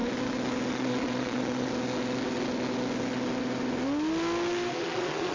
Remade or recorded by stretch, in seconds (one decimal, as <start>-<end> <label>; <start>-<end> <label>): 0.0-0.7 recorded; 0.7-1.7 remade; 1.7-4.7 recorded; 4.7-5.3 remade